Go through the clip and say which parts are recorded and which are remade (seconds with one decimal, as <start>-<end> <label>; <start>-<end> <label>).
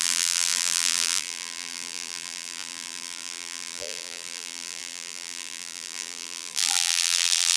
0.0-7.6 remade